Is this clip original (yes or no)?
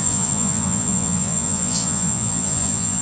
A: no